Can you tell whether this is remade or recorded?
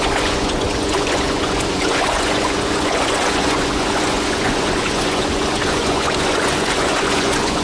remade